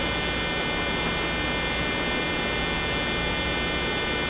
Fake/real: real